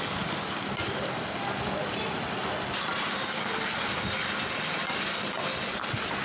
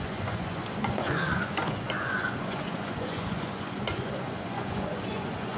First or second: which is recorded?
first